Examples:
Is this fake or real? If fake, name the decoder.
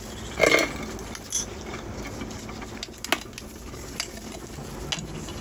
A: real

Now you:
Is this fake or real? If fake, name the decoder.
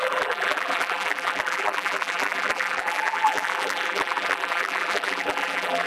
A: fake, vocoder, BigVGAN v2